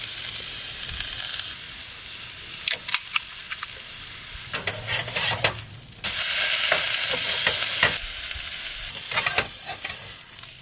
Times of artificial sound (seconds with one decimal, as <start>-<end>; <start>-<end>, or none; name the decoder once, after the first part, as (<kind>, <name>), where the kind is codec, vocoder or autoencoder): none